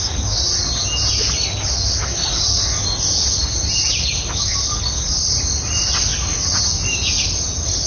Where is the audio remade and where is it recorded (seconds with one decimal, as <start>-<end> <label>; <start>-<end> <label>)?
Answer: 0.0-7.9 recorded